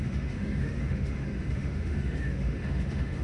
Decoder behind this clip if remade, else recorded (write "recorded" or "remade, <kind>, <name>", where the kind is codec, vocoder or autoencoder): remade, autoencoder, DAC-VAE